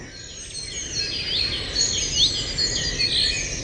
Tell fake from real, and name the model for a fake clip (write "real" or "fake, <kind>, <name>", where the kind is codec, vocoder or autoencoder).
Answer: real